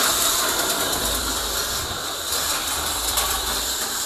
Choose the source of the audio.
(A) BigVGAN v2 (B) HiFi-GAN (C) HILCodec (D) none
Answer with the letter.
A